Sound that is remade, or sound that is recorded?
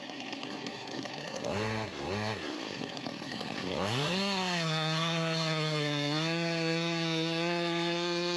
remade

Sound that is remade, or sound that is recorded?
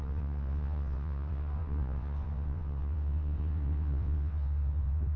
remade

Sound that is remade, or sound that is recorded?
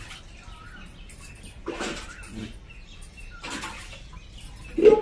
recorded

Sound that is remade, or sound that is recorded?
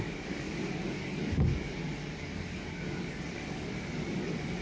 remade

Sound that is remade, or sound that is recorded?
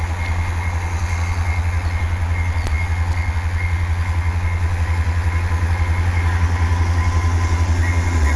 remade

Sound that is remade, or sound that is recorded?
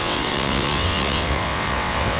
remade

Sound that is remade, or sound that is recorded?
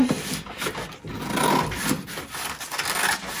recorded